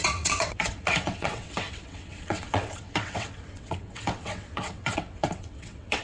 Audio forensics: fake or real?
fake